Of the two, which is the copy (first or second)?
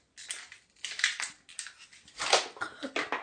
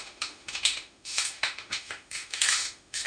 second